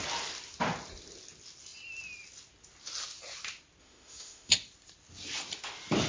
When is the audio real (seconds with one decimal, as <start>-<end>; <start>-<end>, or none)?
0.0-3.8; 4.5-6.1